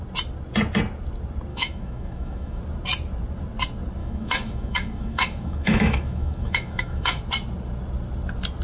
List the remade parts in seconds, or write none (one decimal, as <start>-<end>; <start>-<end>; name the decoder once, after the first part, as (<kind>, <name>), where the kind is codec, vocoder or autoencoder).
1.5-2.6 (autoencoder, DAC-VAE); 4.0-7.2